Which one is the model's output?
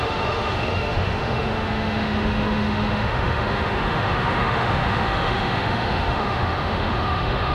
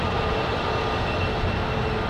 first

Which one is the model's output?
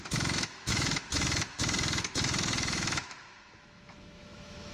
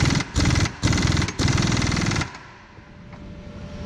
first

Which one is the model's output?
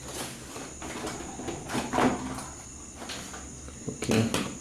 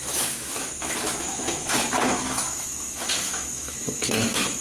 second